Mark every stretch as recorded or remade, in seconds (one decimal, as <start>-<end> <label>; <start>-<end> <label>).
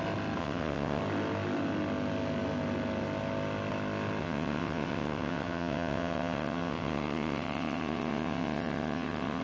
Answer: 0.0-0.4 recorded; 0.4-1.0 remade; 1.0-4.2 recorded; 4.2-9.4 remade